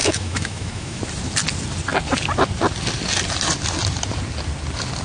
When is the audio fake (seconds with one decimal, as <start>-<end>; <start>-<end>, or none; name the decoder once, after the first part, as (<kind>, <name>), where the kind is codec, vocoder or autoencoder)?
0.0-1.0 (autoencoder, DAC-VAE)